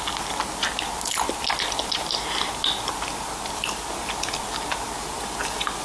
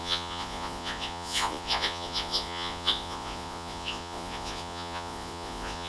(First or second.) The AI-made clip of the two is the second